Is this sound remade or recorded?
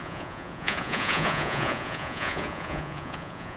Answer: remade